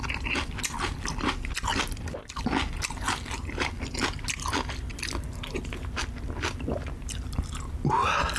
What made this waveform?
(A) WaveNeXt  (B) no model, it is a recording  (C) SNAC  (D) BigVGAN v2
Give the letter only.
B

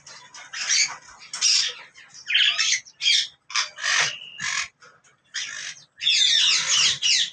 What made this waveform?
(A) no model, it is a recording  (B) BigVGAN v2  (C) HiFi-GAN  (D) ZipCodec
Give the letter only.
A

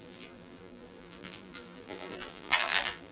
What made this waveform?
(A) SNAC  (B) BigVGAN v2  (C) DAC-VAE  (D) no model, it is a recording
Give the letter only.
B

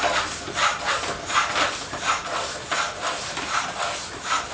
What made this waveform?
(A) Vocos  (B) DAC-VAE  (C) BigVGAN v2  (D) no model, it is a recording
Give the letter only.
D